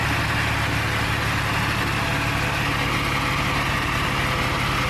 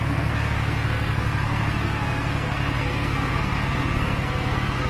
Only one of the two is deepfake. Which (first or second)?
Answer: second